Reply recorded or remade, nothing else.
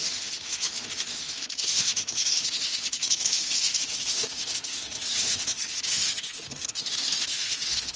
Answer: remade